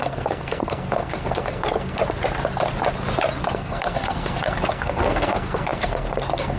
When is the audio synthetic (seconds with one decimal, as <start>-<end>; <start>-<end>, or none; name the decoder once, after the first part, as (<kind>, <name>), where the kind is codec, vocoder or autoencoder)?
0.0-2.0 (codec, SNAC); 3.4-6.6